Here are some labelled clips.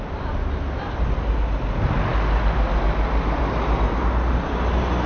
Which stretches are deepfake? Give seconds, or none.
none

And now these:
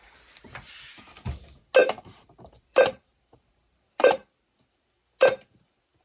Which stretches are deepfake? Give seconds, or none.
1.8-4.5 (vocoder, BigVGAN v2)

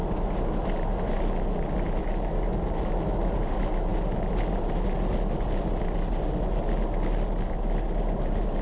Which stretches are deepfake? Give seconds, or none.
2.0-2.6 (codec, DAC)

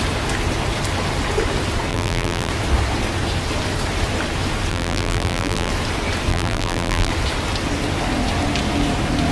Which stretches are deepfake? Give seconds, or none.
1.9-2.5 (vocoder, BigVGAN v2); 4.7-5.7; 6.3-7.1

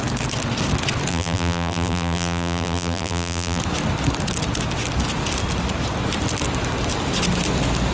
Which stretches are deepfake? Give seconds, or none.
1.1-3.6 (vocoder, BigVGAN v2)